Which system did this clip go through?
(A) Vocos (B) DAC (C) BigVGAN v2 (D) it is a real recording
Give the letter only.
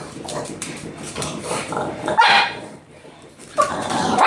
C